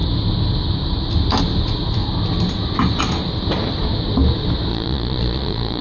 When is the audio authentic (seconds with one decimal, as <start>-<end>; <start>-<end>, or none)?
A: 0.0-4.7